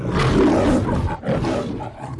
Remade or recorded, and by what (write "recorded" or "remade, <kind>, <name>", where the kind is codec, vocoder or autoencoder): recorded